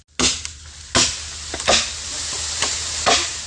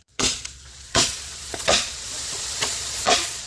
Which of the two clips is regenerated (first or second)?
second